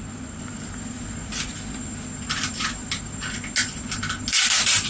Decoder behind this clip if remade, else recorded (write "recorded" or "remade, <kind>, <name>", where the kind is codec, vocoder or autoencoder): recorded